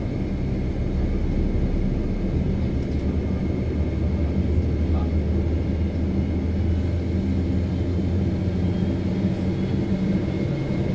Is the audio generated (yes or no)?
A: no